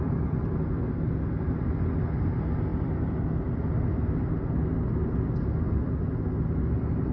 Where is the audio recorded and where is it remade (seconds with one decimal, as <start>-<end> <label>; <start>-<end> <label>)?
0.0-7.1 recorded